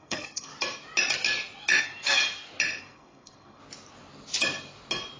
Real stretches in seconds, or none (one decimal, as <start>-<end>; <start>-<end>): 0.5-1.8; 2.2-2.8; 3.6-5.2